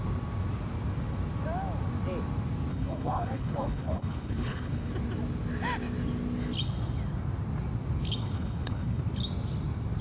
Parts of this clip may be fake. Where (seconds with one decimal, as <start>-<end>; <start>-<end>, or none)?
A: 2.7-4.9; 8.2-9.0

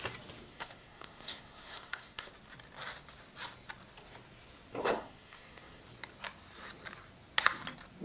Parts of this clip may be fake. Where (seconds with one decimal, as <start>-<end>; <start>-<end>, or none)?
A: 0.5-2.3; 4.8-5.8

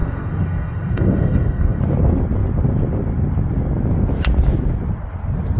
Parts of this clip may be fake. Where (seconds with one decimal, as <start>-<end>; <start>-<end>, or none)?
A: 0.0-1.8

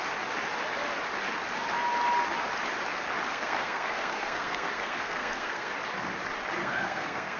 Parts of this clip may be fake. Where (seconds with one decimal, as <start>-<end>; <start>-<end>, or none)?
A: 3.3-5.7; 6.6-7.4

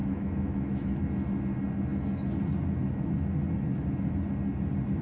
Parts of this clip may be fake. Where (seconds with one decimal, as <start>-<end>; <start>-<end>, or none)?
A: 0.0-1.0

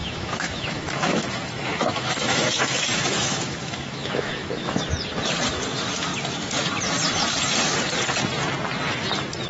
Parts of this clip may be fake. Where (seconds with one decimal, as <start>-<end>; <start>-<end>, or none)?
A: 0.0-4.8